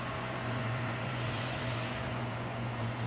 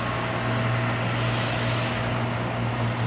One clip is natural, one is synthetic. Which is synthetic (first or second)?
first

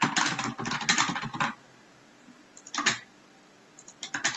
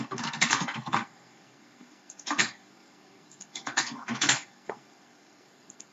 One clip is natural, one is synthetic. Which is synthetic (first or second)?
second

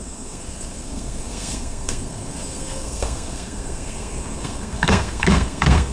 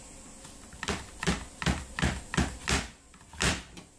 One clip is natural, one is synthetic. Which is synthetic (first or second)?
first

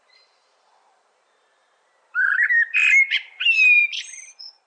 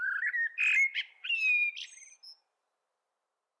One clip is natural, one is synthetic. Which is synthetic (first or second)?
first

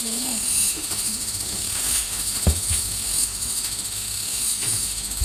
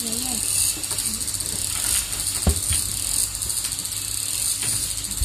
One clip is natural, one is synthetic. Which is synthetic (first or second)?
first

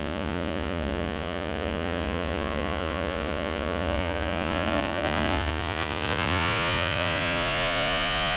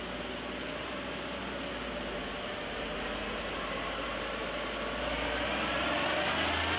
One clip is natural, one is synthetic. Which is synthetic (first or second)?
first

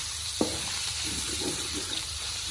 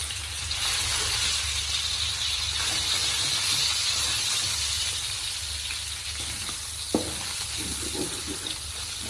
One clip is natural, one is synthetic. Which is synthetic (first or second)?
first